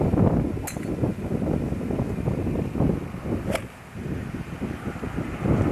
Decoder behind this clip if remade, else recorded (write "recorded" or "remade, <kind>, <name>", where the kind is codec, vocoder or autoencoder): recorded